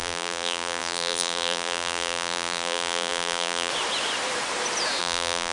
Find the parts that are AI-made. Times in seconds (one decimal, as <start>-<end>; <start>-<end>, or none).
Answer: 0.0-3.7; 5.0-5.5